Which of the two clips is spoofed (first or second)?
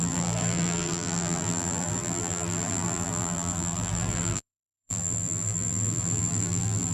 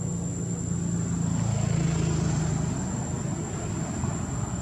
first